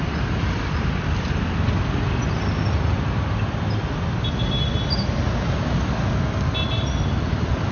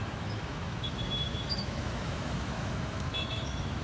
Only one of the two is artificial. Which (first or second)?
second